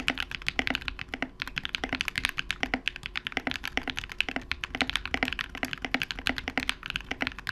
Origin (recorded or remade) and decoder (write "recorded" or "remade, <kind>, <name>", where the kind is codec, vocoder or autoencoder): recorded